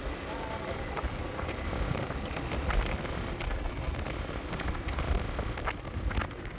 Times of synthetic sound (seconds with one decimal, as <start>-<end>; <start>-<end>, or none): none